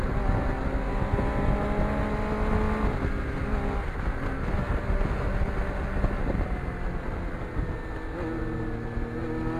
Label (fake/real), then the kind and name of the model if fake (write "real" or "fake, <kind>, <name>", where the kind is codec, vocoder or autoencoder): real